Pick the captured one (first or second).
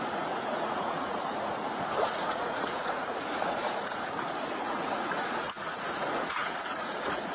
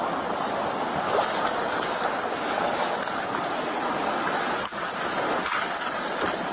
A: second